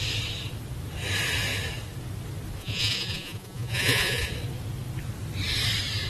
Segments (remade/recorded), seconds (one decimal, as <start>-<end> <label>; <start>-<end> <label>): 0.0-2.6 recorded; 2.6-4.3 remade; 4.3-6.1 recorded